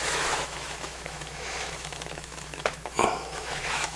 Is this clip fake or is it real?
fake